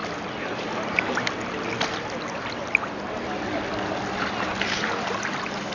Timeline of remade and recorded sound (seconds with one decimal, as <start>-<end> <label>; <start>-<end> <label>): 0.0-5.7 recorded